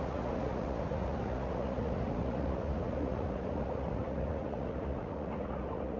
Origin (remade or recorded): remade